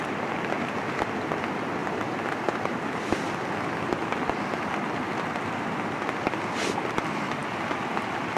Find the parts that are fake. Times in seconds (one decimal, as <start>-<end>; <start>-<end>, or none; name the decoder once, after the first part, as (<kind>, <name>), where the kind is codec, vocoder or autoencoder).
none

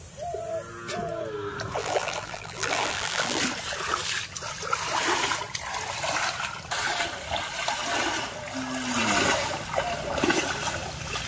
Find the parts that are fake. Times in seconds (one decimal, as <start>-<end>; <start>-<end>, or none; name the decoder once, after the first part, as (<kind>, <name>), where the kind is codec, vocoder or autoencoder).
1.8-3.4 (vocoder, BigVGAN v2)

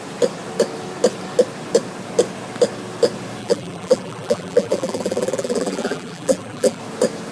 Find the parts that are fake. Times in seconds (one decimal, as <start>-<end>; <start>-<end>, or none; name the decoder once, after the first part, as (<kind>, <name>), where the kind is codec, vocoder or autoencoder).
3.4-6.8 (vocoder, BigVGAN v2)

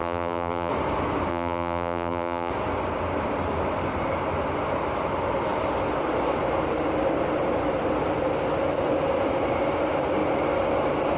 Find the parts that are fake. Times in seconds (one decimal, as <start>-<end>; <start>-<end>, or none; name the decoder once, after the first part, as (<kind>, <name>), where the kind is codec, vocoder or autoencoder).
0.0-0.7 (vocoder, BigVGAN v2); 1.3-2.5

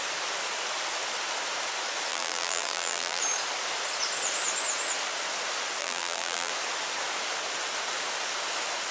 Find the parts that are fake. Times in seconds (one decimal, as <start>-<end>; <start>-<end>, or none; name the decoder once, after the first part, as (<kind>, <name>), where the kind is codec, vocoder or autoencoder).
2.1-3.2 (vocoder, BigVGAN v2); 5.8-6.5

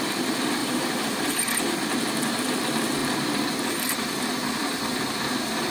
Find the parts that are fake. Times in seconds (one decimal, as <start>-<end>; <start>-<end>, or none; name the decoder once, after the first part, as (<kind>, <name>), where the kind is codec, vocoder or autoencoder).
0.6-1.2 (vocoder, BigVGAN v2)